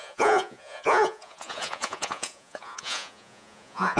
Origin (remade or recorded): remade